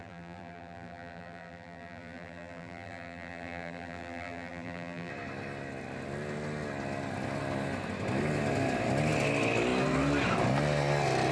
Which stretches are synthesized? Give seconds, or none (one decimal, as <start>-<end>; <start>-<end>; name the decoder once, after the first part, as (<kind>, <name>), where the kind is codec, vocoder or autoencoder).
0.0-5.1 (vocoder, BigVGAN v2)